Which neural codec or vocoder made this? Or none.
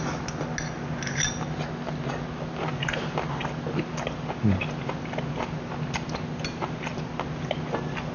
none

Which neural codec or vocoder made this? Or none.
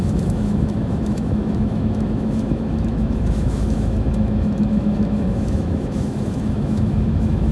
autoencoder, DAC-VAE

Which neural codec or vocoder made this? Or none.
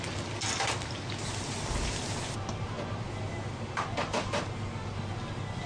none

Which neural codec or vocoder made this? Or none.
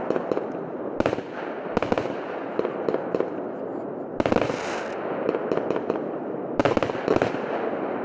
none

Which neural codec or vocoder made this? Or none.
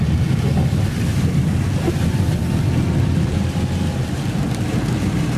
none